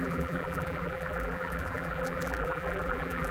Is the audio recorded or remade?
remade